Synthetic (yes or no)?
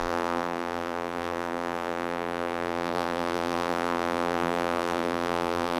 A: yes